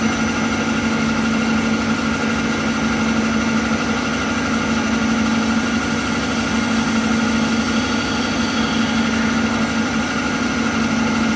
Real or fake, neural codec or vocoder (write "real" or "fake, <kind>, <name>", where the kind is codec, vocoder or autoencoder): real